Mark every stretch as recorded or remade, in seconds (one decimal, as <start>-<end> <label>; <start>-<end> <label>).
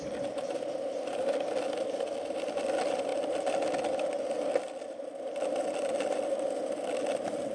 0.0-7.5 recorded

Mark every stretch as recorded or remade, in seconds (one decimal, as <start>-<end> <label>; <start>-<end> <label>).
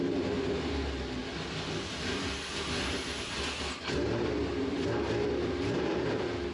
0.0-6.5 recorded